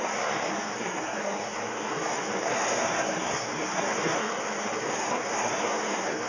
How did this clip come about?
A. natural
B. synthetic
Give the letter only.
B